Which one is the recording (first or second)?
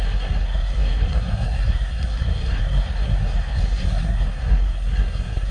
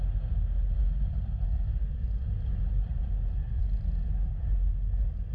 second